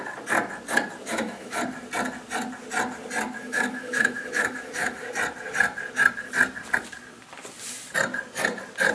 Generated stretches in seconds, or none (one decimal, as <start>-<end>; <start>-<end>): 1.1-1.6; 3.4-5.1